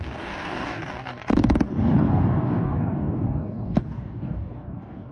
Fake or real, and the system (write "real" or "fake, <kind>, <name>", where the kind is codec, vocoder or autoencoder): fake, codec, DAC